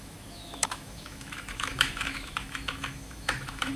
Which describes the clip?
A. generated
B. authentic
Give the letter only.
A